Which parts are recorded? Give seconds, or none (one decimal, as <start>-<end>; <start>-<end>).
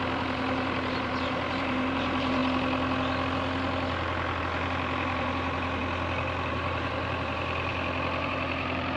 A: 2.4-4.4; 5.8-6.5; 7.7-8.2